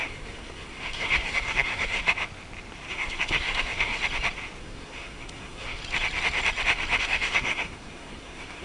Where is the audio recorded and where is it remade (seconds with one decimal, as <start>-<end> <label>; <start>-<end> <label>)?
0.0-2.0 remade; 2.0-2.9 recorded; 2.9-4.0 remade; 4.0-4.6 recorded; 4.6-5.8 remade; 5.8-7.0 recorded; 7.0-8.6 remade